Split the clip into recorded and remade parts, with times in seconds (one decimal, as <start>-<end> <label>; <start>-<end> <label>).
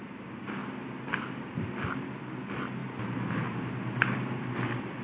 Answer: 0.0-5.0 recorded